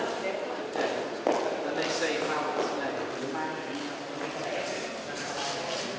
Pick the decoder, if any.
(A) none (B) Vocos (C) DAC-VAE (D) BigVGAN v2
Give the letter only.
A